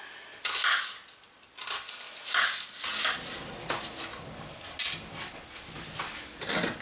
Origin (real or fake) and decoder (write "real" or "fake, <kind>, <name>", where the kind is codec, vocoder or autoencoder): real